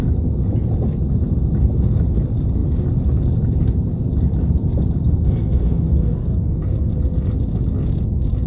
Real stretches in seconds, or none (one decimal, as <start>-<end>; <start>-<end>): 0.0-5.0; 7.0-8.5